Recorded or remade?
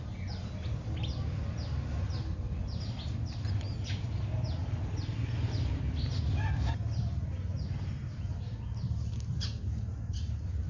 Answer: recorded